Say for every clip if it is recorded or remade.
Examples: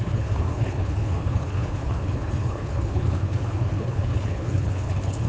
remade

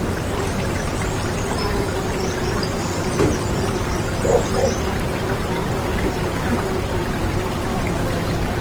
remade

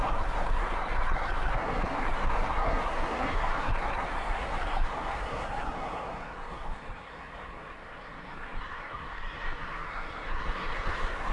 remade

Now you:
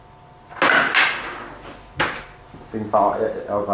recorded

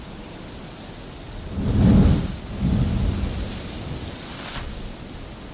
recorded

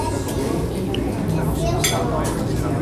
recorded